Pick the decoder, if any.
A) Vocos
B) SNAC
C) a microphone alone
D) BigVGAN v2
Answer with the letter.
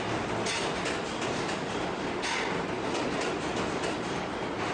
C